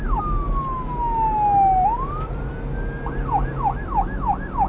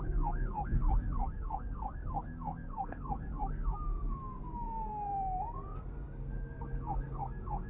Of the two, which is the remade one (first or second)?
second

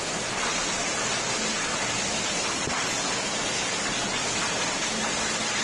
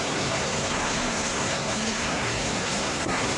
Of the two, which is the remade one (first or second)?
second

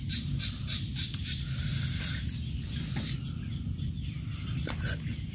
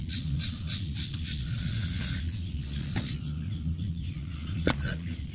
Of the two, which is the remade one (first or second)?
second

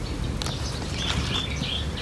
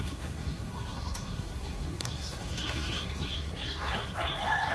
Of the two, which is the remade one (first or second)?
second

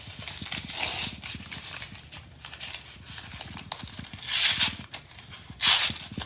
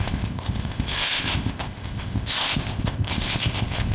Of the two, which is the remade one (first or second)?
second